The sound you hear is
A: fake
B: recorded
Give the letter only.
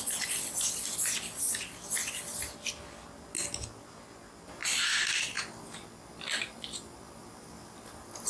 B